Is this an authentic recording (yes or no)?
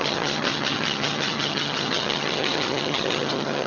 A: no